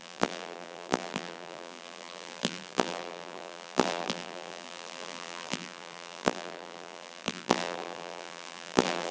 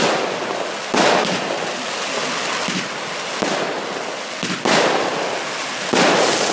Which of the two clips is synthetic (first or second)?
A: first